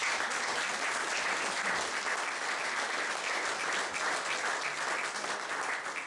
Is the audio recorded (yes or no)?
yes